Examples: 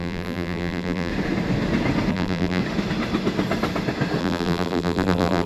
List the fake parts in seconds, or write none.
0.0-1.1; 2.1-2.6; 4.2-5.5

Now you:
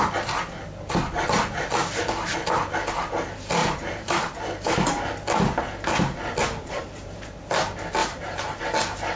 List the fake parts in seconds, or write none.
3.6-5.0; 6.8-7.4; 8.0-8.6

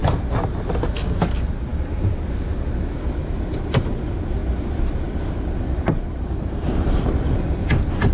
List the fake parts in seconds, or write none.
1.0-1.7; 2.9-4.4; 4.9-8.1

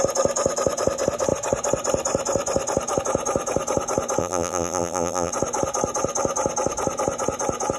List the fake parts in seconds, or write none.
4.2-5.3

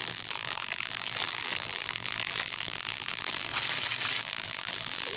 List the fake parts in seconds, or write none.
0.0-3.5; 4.2-5.2

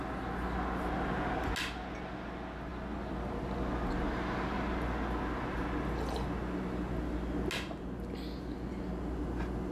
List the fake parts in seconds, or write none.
none